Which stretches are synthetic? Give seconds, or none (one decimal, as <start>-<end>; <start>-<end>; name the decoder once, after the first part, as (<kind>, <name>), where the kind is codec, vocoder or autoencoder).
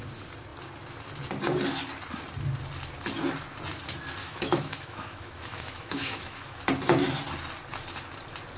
4.2-6.6 (autoencoder, DAC-VAE)